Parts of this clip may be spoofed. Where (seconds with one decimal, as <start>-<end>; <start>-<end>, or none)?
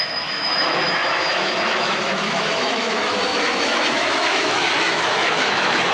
0.0-5.9